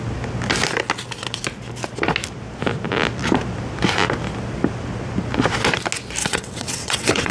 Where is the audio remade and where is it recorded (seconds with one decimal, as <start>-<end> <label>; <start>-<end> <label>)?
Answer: 0.0-6.2 recorded; 6.2-7.3 remade